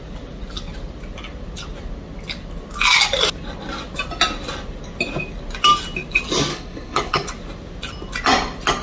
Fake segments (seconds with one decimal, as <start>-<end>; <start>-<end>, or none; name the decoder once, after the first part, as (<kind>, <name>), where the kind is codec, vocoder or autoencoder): 6.5-7.3 (codec, HILCodec)